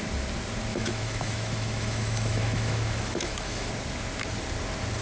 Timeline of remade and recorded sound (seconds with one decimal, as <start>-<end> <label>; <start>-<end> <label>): 0.0-0.7 recorded; 0.7-3.7 remade; 3.7-5.0 recorded